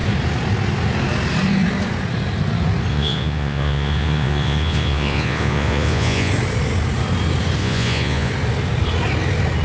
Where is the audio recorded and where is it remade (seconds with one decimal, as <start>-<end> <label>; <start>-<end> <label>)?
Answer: 0.0-2.9 recorded; 2.9-6.3 remade; 6.3-7.6 recorded; 7.6-8.3 remade; 8.3-9.6 recorded